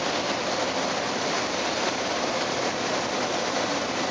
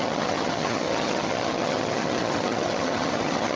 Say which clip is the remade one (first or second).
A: second